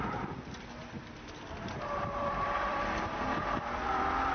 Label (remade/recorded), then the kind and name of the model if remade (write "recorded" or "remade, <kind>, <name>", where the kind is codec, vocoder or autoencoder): recorded